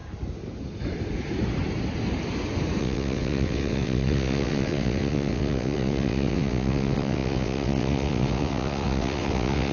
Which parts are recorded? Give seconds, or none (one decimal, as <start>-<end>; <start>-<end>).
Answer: 0.0-2.8